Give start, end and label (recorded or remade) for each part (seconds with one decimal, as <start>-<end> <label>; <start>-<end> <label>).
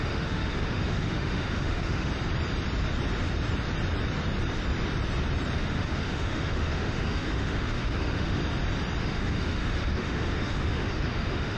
0.0-2.1 remade; 2.1-5.7 recorded; 5.7-8.4 remade; 8.4-9.0 recorded; 9.0-11.6 remade